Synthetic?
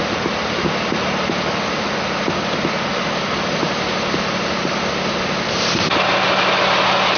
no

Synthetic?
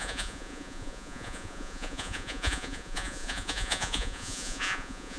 yes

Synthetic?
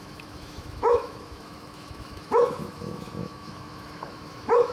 yes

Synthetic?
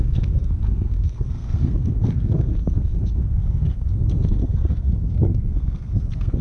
yes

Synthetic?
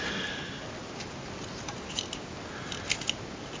no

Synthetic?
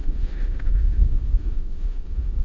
yes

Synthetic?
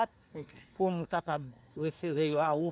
yes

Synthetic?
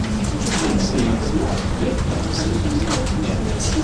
yes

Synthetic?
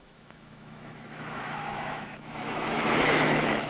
yes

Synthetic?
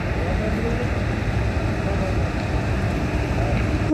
no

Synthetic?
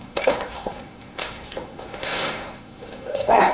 yes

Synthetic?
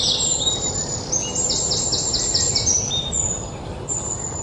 no